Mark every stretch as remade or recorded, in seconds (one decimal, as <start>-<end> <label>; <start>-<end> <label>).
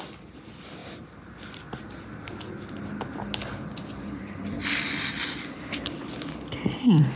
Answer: 0.0-7.2 recorded